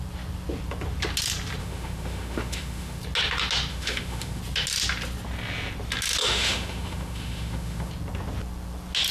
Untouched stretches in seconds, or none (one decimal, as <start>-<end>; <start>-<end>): 0.0-1.6; 3.0-3.7; 4.4-6.2; 7.9-9.1